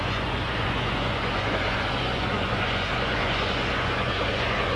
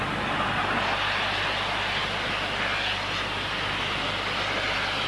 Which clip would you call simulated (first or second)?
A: first